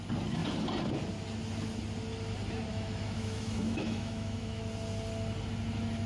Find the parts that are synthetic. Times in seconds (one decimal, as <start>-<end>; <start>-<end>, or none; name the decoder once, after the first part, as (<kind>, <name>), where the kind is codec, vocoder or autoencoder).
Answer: 2.7-4.6 (autoencoder, DAC-VAE)